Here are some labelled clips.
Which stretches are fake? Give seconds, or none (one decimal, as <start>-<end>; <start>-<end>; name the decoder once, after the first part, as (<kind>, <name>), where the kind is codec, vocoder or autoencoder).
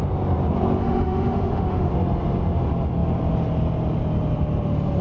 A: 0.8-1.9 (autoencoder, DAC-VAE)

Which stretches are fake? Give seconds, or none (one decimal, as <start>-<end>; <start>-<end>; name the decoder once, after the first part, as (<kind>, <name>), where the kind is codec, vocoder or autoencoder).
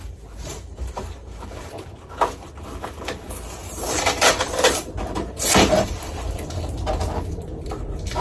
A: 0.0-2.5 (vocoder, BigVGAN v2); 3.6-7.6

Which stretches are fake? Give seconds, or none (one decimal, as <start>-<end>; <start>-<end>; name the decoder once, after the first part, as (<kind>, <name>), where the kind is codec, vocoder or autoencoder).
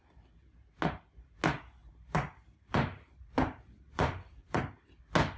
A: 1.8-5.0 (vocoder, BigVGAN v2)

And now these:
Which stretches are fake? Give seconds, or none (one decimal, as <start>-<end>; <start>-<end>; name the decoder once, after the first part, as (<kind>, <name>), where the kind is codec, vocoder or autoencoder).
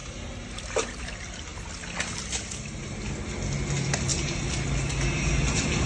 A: none